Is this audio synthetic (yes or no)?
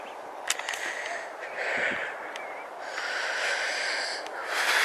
no